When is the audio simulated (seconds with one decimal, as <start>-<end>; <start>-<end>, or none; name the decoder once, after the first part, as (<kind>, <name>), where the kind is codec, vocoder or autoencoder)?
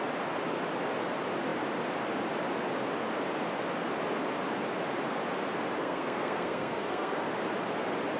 5.8-7.3 (codec, SNAC)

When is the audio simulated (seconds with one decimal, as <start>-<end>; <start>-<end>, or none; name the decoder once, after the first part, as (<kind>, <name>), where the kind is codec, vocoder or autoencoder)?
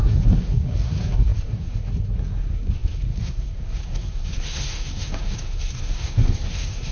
0.0-6.9 (codec, SNAC)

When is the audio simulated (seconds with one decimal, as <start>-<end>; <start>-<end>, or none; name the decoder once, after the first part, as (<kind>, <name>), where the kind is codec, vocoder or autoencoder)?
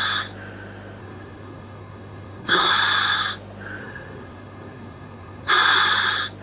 1.0-2.7 (codec, SNAC); 3.8-5.5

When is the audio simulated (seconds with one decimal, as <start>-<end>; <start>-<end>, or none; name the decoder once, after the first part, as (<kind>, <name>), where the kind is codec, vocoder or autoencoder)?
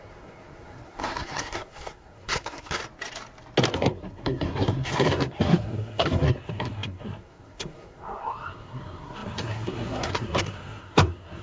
0.0-2.8 (codec, SNAC); 3.7-11.4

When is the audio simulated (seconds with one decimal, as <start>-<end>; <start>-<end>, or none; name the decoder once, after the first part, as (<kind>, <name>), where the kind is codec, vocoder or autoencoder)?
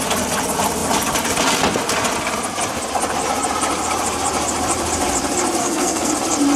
5.6-6.1 (codec, SNAC)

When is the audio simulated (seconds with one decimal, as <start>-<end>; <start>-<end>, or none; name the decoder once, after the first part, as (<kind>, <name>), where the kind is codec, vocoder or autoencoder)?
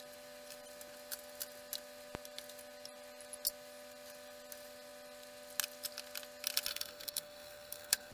6.7-8.1 (codec, SNAC)